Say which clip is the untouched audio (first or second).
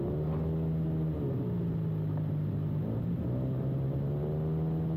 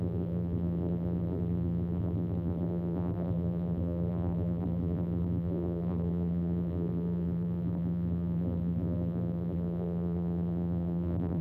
first